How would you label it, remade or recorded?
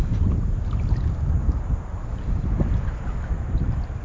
recorded